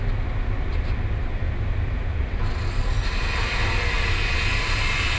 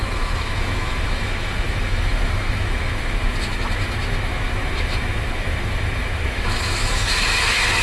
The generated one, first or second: second